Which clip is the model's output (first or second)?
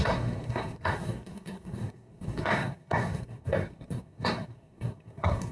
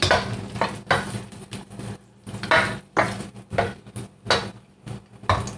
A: first